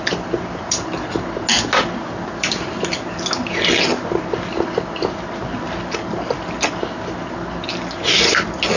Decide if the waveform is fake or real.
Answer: real